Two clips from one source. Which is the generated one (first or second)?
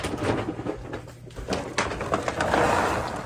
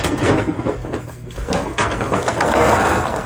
second